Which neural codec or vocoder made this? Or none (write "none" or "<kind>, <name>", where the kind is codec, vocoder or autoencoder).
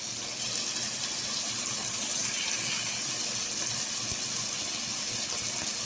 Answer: none